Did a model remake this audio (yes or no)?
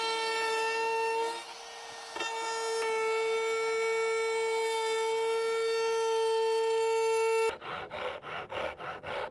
no